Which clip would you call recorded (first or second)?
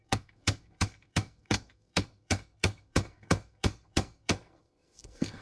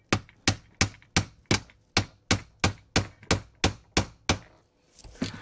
second